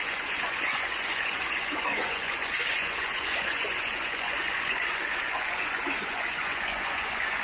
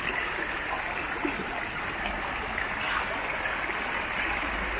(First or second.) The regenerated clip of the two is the first